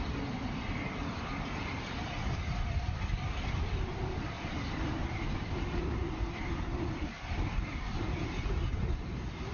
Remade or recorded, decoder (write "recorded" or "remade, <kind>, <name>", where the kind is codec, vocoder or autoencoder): recorded